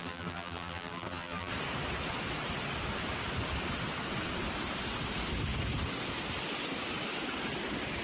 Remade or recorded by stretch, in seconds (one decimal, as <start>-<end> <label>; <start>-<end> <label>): 0.0-1.5 remade; 1.5-8.0 recorded